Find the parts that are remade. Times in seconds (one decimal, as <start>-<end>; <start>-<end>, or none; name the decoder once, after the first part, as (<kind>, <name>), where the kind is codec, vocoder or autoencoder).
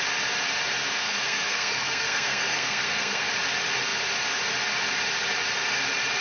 1.0-3.3 (codec, SNAC)